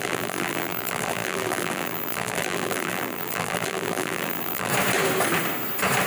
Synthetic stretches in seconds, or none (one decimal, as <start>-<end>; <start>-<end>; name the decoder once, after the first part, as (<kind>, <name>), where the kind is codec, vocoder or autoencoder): 0.0-4.7 (vocoder, BigVGAN v2)

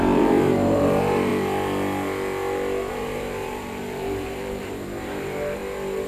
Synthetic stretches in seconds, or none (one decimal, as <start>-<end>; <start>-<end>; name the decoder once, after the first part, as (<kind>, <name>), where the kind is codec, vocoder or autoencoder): 0.0-1.3 (vocoder, BigVGAN v2); 2.9-5.6

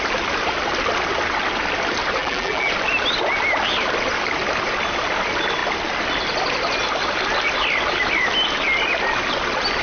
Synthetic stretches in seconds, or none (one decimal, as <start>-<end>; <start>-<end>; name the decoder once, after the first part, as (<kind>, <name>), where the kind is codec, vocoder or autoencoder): 2.2-2.7 (vocoder, BigVGAN v2)

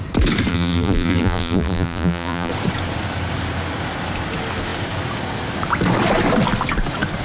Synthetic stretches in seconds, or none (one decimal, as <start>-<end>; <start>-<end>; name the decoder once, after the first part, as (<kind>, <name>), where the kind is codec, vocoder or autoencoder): 0.5-2.5 (vocoder, BigVGAN v2)

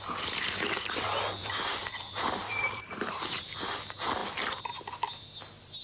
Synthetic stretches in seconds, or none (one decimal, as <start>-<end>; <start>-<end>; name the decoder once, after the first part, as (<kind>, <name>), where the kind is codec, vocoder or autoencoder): 1.4-3.6 (vocoder, BigVGAN v2)

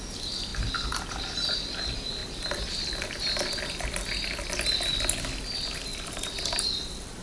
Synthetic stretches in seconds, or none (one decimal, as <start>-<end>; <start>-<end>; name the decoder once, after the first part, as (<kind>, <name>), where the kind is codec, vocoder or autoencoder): 2.2-3.6 (vocoder, BigVGAN v2); 5.9-7.2

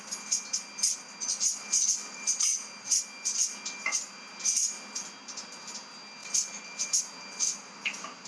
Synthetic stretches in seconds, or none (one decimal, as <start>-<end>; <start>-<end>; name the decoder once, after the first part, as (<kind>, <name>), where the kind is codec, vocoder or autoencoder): none

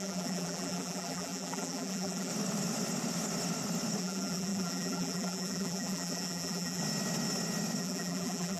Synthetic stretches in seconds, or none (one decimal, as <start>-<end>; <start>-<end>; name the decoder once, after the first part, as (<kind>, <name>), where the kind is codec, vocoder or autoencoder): 0.0-2.3 (vocoder, BigVGAN v2); 4.0-6.8; 7.8-8.6